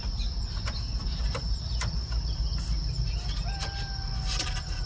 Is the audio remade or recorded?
recorded